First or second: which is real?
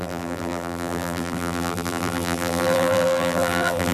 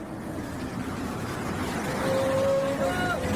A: second